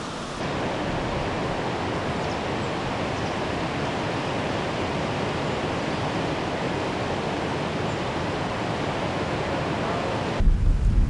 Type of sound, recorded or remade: recorded